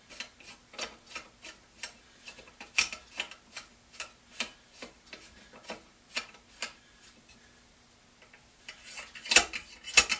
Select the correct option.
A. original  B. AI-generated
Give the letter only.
A